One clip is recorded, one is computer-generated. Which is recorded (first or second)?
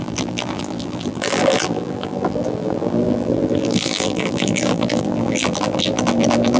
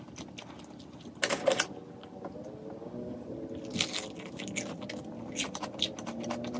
second